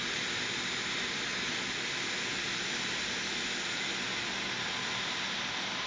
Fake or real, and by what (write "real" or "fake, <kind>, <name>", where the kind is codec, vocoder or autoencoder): real